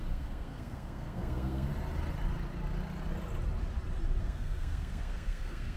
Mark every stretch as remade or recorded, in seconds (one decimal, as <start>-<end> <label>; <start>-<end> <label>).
0.0-1.7 remade; 1.7-4.2 recorded; 4.2-5.8 remade